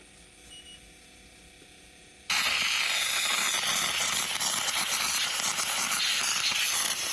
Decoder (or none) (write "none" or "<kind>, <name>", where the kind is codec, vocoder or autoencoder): none